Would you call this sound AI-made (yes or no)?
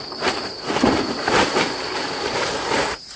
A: yes